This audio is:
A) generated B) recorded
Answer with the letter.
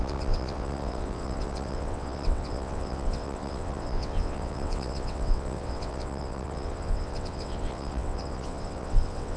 A